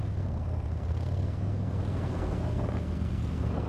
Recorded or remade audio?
remade